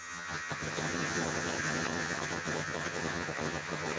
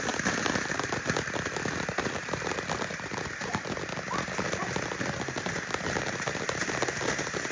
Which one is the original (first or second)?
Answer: second